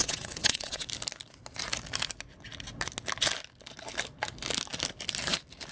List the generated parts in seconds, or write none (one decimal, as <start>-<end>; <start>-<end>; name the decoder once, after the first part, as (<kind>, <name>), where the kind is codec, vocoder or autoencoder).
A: 0.0-0.9 (vocoder, WaveNeXt)